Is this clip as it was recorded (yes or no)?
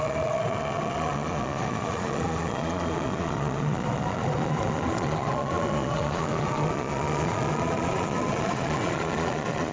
no